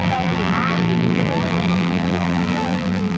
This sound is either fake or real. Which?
fake